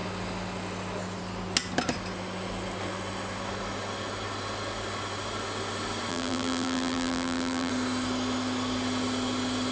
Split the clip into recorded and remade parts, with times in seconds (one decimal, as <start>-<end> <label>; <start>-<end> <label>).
0.0-6.1 recorded; 6.1-7.7 remade; 7.7-9.7 recorded